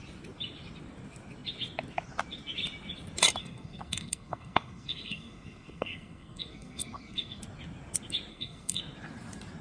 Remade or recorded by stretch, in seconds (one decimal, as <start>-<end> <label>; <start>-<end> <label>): 0.0-3.4 recorded; 3.4-7.4 remade; 7.4-8.3 recorded; 8.3-8.8 remade; 8.8-9.6 recorded